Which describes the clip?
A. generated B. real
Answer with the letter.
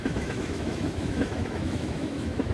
A